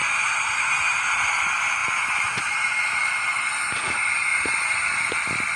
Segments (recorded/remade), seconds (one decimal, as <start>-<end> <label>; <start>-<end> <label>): 0.0-5.6 recorded